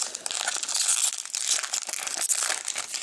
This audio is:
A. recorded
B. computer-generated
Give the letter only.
A